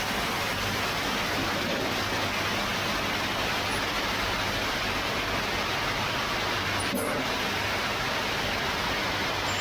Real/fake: real